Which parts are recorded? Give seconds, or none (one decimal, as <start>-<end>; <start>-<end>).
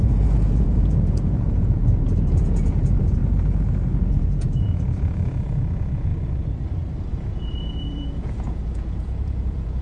3.2-4.1; 6.1-7.1